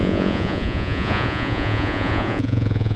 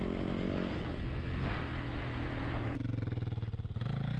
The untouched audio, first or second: second